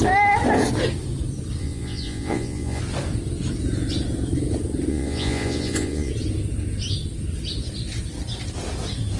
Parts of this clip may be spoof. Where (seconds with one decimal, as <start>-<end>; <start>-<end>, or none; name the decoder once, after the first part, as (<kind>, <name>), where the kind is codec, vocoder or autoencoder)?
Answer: 1.6-2.8 (vocoder, Vocos); 4.9-6.1